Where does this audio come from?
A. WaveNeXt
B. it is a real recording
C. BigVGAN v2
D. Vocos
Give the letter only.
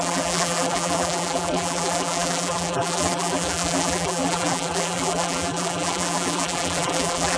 C